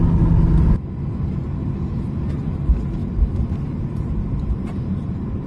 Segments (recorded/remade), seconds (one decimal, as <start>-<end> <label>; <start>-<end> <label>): 0.0-3.0 recorded; 3.0-5.5 remade